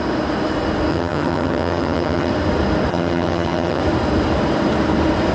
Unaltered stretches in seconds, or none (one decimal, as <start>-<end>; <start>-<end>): 0.0-0.9; 2.3-2.9; 3.8-5.3